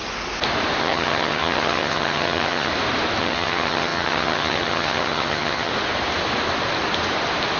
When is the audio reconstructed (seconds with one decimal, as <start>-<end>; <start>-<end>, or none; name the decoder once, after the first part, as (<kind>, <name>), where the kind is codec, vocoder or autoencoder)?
0.8-2.7 (vocoder, HiFi-GAN); 3.2-5.7